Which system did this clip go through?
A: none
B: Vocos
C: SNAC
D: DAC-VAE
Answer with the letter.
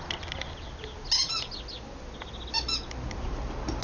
A